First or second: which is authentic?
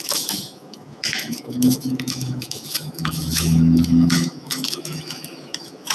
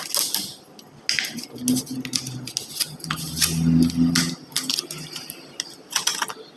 second